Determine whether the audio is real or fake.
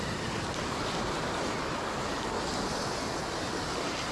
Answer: real